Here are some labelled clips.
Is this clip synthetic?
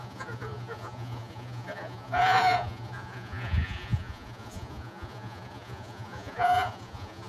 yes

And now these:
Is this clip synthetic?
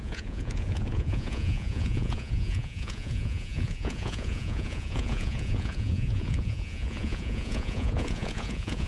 yes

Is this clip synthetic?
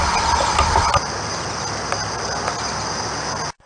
no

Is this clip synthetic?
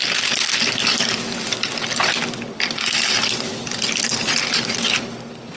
no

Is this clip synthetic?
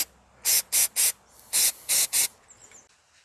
no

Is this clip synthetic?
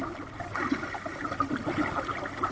no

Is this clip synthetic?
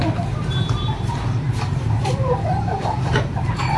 yes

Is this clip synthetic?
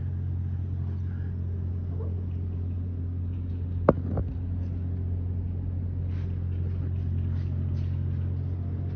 no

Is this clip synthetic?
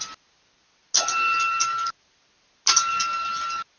no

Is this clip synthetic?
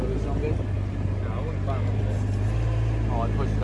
no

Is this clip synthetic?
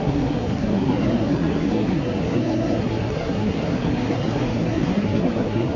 yes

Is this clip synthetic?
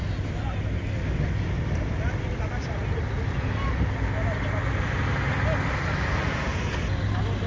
no